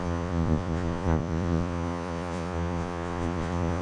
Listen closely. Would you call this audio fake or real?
fake